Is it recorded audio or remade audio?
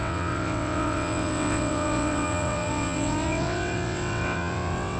remade